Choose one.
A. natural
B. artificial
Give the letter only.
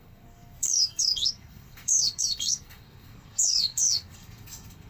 B